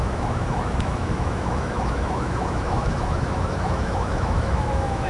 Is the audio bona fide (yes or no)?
no